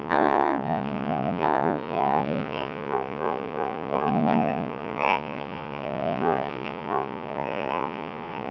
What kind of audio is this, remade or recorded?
remade